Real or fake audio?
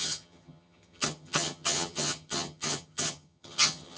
fake